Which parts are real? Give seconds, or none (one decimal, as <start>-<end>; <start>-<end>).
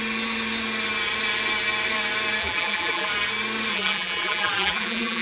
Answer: 0.0-2.4; 3.1-3.7